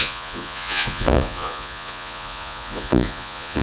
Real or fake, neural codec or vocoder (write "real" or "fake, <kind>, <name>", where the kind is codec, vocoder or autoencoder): fake, vocoder, Vocos